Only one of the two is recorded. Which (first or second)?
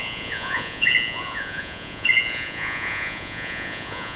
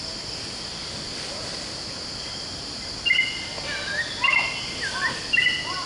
second